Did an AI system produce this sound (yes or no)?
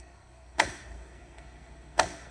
yes